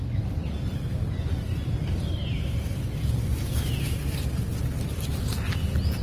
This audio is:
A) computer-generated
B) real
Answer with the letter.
B